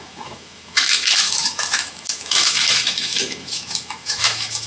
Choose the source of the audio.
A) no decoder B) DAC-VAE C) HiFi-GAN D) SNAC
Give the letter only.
B